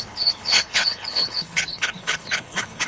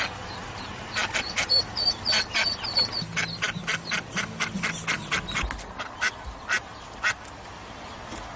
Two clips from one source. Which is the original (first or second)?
second